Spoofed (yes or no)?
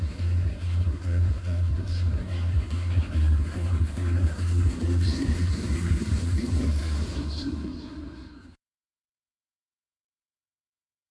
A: yes